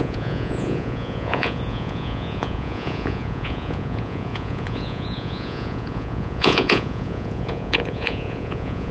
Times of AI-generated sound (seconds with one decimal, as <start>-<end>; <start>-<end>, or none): 0.0-8.9